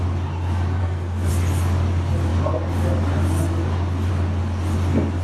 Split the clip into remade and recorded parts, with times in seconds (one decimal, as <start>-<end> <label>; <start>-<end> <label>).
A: 0.0-0.8 recorded; 0.8-1.3 remade; 1.3-5.2 recorded